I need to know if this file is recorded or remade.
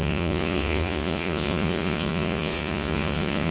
remade